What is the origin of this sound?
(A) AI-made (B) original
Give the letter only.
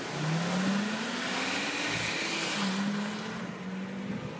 B